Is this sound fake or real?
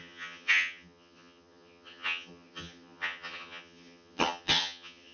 fake